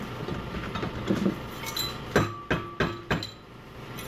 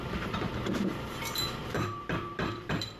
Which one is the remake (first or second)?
second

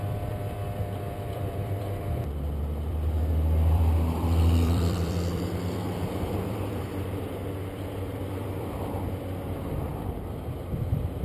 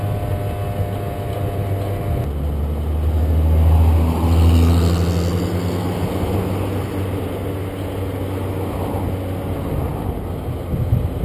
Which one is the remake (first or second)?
first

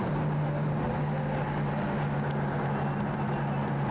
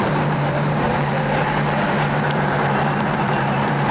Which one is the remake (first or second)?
second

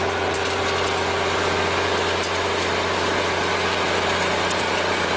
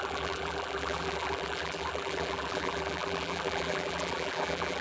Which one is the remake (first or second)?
second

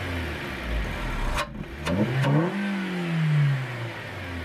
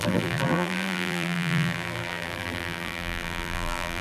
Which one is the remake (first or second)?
second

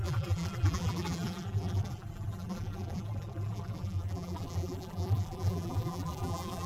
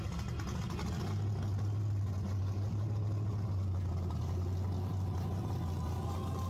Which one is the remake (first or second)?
first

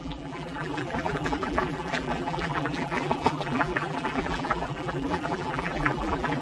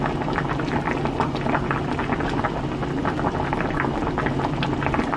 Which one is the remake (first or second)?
first